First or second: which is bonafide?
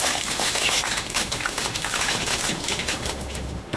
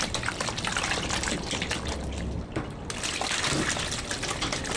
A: second